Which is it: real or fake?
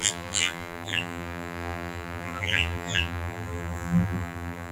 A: fake